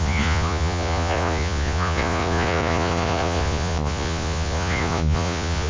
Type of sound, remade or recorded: remade